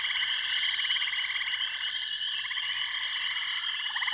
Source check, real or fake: real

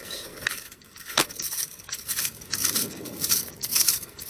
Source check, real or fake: fake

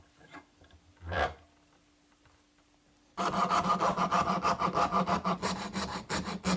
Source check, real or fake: real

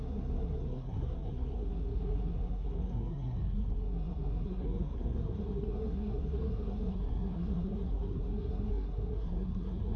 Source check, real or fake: fake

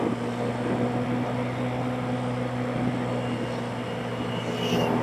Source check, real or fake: real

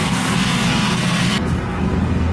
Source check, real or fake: fake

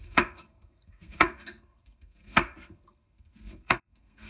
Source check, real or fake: fake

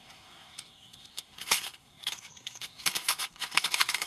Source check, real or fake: fake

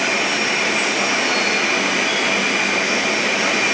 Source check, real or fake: real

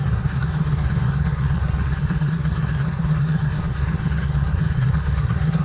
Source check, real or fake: fake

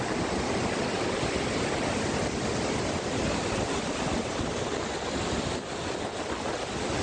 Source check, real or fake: real